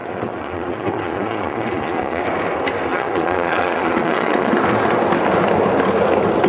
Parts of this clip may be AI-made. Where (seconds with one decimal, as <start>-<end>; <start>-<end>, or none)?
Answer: 0.0-2.2; 2.9-4.5